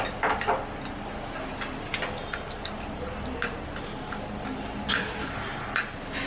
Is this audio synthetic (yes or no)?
no